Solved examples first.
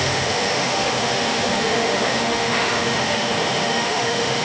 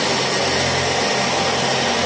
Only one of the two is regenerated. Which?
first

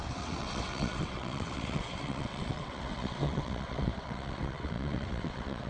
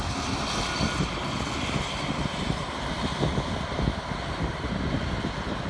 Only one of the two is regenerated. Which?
first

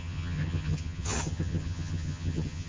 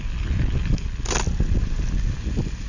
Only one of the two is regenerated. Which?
first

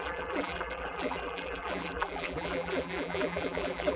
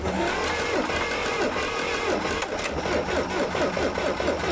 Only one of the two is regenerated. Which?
first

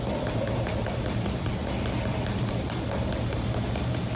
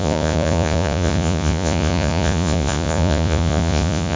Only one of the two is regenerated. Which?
second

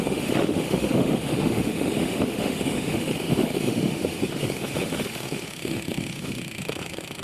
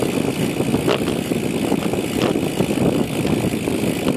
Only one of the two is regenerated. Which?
first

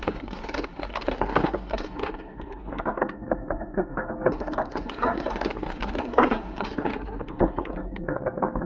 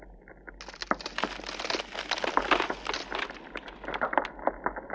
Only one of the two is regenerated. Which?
first